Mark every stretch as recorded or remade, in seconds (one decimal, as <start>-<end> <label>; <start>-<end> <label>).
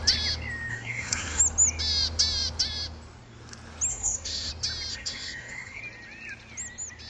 0.0-0.7 recorded; 0.7-1.4 remade; 1.4-3.9 recorded; 3.9-4.5 remade; 4.5-4.9 recorded; 4.9-5.8 remade; 5.8-7.1 recorded